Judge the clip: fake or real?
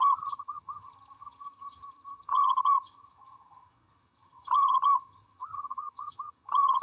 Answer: fake